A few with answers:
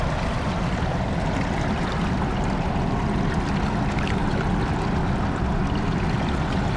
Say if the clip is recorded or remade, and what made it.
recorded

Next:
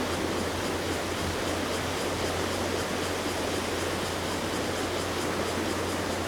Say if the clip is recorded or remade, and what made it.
recorded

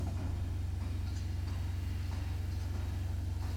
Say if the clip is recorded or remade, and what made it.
recorded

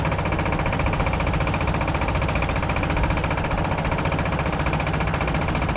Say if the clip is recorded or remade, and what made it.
recorded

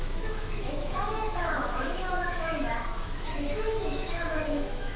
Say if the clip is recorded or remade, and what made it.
remade, autoencoder, DAC-VAE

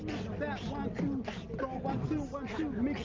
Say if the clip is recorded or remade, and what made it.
recorded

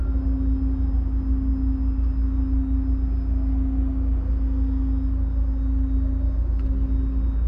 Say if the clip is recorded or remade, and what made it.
recorded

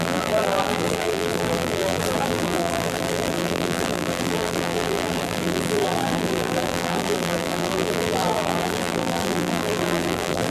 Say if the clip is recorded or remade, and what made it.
remade, vocoder, BigVGAN v2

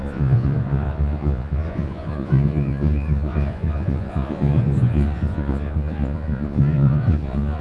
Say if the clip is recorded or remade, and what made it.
remade, vocoder, Vocos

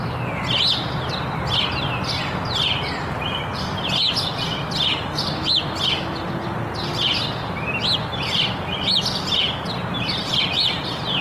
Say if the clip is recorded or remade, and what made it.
recorded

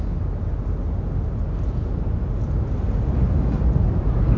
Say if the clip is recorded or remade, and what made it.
recorded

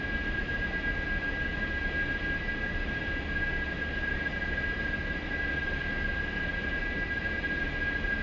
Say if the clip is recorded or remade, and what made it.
recorded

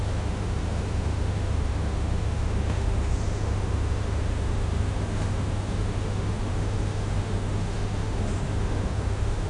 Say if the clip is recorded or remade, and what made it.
remade, autoencoder, DAC-VAE